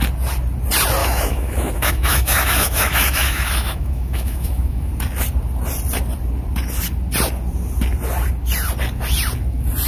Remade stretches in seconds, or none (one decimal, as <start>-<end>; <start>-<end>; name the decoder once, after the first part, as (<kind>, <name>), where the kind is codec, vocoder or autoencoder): 1.0-4.9 (autoencoder, DAC-VAE)